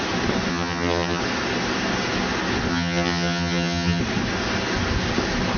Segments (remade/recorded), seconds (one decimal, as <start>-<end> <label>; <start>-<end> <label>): 0.0-0.5 recorded; 0.5-1.2 remade; 1.2-2.7 recorded; 2.7-4.0 remade; 4.0-5.6 recorded